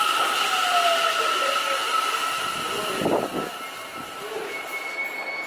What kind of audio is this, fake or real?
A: real